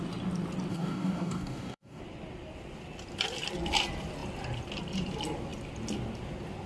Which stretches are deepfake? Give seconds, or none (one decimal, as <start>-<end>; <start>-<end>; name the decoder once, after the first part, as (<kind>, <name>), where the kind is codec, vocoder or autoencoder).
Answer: 0.7-2.0 (codec, DAC)